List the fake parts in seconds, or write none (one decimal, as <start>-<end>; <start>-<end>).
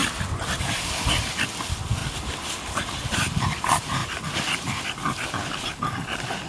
0.0-1.2